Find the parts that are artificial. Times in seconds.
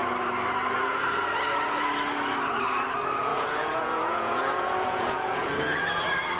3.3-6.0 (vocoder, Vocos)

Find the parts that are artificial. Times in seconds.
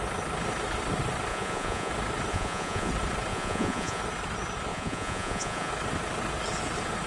1.3-1.9 (vocoder, Vocos); 2.3-2.9; 3.3-4.0; 4.7-5.7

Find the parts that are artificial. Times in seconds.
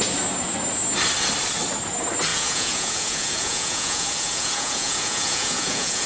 2.3-6.1 (vocoder, Vocos)